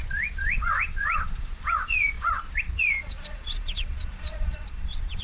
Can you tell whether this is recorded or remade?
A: remade